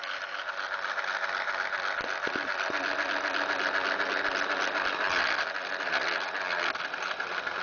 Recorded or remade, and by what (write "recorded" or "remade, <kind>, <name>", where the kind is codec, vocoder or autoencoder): recorded